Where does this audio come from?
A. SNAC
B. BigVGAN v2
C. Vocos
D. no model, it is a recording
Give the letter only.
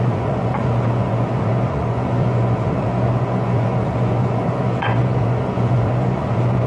C